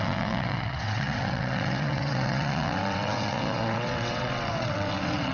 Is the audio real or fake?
fake